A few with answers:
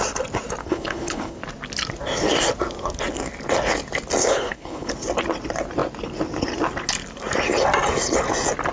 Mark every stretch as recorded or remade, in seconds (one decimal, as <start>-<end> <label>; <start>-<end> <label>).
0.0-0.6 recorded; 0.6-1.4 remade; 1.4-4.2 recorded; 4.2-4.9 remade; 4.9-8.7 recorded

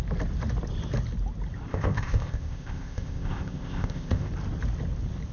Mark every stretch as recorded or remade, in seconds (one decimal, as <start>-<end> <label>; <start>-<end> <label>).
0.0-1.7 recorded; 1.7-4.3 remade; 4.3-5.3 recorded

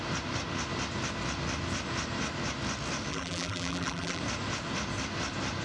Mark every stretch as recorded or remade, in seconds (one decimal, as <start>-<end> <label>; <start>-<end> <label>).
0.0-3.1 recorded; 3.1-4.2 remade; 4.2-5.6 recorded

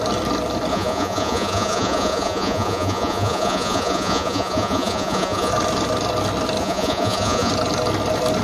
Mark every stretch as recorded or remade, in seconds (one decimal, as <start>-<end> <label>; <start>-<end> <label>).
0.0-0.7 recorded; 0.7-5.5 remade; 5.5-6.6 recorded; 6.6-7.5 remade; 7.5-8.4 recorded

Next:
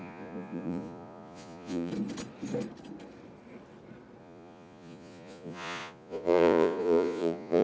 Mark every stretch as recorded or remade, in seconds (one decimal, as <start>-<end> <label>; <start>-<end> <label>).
0.0-1.9 remade; 1.9-4.2 recorded; 4.2-7.6 remade

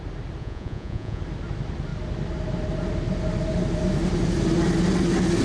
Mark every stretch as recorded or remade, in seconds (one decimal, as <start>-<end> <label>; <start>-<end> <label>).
0.0-0.4 recorded; 0.4-1.2 remade; 1.2-5.4 recorded